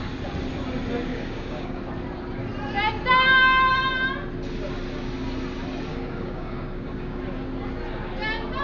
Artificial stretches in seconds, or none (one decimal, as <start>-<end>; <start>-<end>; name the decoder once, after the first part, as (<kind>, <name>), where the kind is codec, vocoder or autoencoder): 1.1-1.8 (codec, DAC); 5.9-7.2